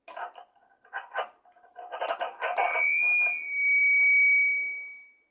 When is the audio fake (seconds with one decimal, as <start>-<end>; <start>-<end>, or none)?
none